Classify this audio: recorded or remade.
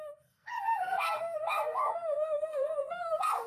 remade